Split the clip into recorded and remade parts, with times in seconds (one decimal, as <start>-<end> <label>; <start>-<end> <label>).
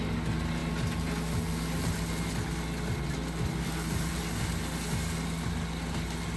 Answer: 0.0-6.4 recorded